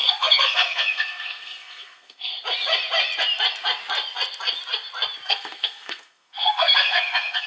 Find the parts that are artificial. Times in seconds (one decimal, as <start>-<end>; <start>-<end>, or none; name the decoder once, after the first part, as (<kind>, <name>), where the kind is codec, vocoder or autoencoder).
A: 0.0-2.3 (codec, SNAC); 5.3-7.5